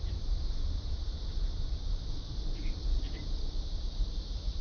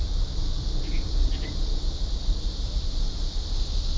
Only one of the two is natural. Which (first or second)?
second